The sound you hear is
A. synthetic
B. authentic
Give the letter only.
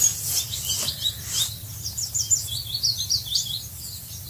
B